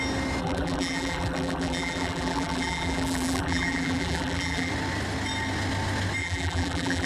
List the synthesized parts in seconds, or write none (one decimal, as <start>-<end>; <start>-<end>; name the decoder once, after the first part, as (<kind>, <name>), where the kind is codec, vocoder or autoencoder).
0.4-4.7 (vocoder, BigVGAN v2); 6.2-7.1